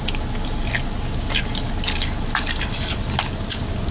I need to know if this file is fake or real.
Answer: real